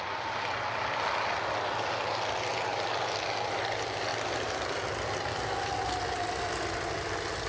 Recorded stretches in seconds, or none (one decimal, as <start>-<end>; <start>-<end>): 0.0-7.5

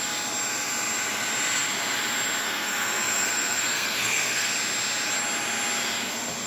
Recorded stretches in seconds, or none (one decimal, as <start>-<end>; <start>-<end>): 0.0-2.4; 4.5-6.5

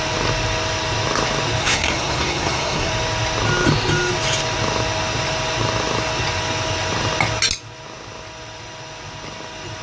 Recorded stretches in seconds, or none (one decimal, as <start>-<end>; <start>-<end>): 0.0-1.6; 2.9-9.8

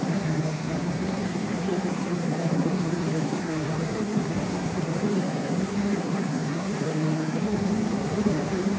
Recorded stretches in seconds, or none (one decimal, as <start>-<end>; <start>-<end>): none

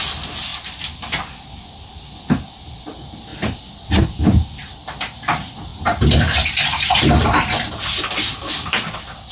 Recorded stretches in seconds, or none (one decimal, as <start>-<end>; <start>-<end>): 0.0-9.3